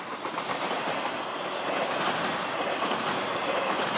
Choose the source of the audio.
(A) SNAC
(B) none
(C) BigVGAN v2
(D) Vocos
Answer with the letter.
B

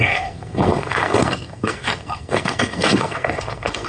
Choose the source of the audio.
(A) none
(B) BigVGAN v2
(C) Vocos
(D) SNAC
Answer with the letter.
D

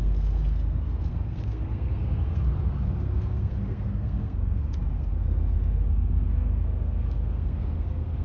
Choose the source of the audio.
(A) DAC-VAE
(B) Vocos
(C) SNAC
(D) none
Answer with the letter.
C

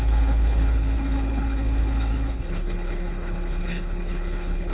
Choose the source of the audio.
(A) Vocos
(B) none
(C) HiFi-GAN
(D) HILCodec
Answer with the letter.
D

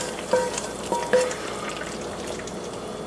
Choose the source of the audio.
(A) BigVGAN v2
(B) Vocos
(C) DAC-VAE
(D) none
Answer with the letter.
D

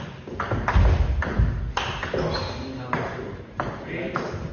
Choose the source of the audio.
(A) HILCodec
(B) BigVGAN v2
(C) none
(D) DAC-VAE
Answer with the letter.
C